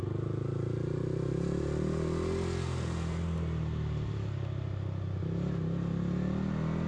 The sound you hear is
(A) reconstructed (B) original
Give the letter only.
B